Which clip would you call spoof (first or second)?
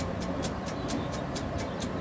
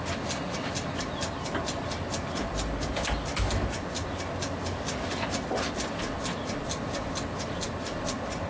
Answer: first